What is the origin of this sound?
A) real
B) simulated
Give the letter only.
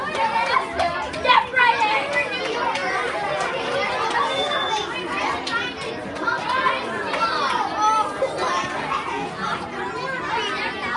A